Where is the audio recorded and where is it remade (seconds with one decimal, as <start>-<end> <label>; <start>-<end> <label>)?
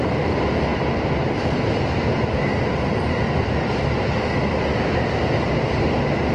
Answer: 0.0-6.3 recorded